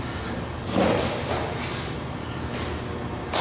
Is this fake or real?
real